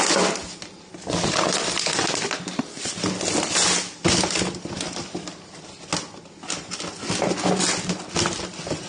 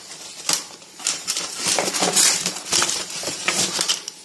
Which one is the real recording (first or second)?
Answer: first